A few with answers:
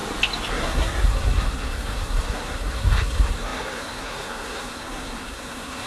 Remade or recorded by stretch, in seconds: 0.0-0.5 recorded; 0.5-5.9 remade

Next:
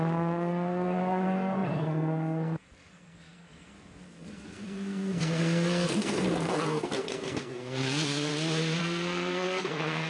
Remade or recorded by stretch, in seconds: 0.0-8.3 remade; 8.3-8.8 recorded; 8.8-10.1 remade

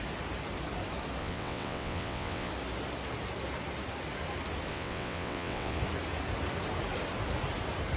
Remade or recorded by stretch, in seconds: 0.0-1.2 recorded; 1.2-2.5 remade; 2.5-4.7 recorded; 4.7-5.8 remade; 5.8-8.0 recorded

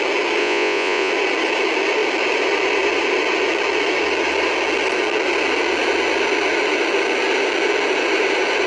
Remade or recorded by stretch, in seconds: 0.0-0.4 recorded; 0.4-1.1 remade; 1.1-8.7 recorded

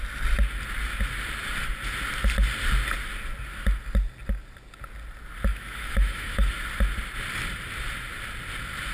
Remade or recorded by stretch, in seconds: 0.0-5.5 recorded; 5.5-6.5 remade; 6.5-8.9 recorded